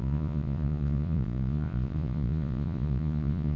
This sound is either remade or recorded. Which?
remade